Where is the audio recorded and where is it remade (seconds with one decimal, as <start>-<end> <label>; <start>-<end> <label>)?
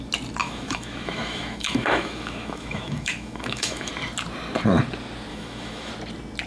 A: 0.0-0.4 recorded; 0.4-3.9 remade; 3.9-5.3 recorded; 5.3-5.9 remade; 5.9-6.5 recorded